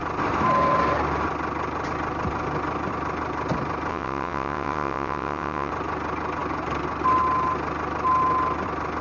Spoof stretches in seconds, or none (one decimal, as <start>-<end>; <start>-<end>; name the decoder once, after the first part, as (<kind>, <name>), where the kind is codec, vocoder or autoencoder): 3.9-5.7 (vocoder, WaveNeXt)